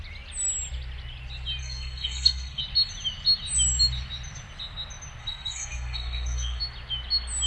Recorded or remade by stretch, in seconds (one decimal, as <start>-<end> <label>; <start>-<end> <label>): 0.0-1.6 recorded; 1.6-2.6 remade; 2.6-5.2 recorded; 5.2-6.6 remade; 6.6-7.5 recorded